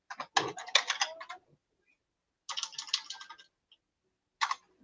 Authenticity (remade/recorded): recorded